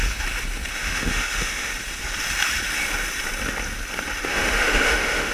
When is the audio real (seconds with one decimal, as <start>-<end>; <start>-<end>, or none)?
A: 0.0-0.7; 1.7-4.2